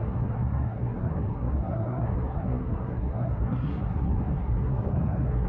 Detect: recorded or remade remade